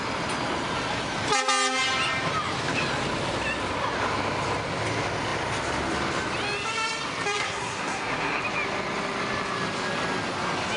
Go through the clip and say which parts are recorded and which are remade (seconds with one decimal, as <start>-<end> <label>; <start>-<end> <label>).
0.0-7.4 recorded; 7.4-8.4 remade; 8.4-10.8 recorded

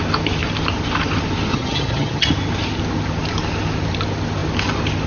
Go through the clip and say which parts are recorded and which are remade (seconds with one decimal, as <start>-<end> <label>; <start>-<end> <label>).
0.0-1.5 recorded; 1.5-2.3 remade; 2.3-5.1 recorded

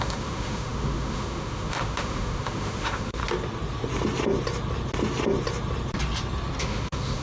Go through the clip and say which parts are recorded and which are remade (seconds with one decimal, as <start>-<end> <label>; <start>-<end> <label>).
0.0-3.2 remade; 3.2-6.6 recorded; 6.6-7.2 remade

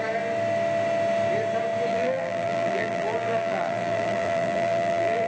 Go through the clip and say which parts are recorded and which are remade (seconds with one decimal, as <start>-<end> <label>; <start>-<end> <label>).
0.0-1.9 recorded; 1.9-5.3 remade

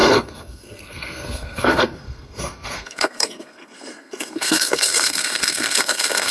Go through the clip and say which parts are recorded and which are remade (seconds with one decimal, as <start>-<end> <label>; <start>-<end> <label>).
0.0-6.3 remade

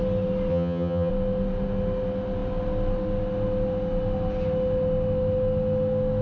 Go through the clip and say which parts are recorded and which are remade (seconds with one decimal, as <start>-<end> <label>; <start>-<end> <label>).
0.0-0.5 recorded; 0.5-1.1 remade; 1.1-6.2 recorded

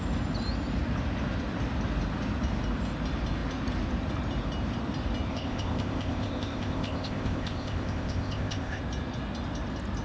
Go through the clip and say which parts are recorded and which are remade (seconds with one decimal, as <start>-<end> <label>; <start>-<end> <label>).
0.0-5.3 recorded; 5.3-8.8 remade; 8.8-10.0 recorded